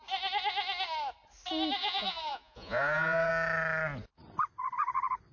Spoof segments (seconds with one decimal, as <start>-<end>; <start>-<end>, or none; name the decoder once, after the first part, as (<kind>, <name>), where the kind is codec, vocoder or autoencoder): 1.8-3.3 (vocoder, Vocos)